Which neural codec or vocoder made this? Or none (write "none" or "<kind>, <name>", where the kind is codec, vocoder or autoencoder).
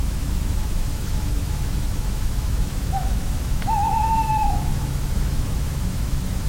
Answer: autoencoder, DAC-VAE